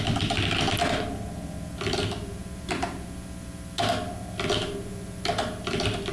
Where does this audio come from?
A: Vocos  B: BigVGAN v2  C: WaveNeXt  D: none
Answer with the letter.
D